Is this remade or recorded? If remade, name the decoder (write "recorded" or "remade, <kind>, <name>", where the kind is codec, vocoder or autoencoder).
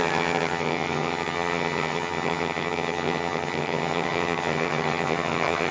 remade, vocoder, HiFi-GAN